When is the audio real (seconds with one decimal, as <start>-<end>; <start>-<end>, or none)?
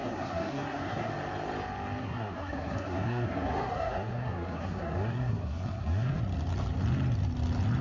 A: 1.1-2.0; 6.2-7.8